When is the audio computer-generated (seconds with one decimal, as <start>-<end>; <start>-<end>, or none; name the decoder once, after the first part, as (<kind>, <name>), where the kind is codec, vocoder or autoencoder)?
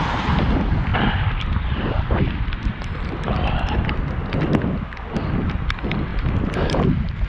0.9-4.1 (vocoder, BigVGAN v2); 6.1-7.3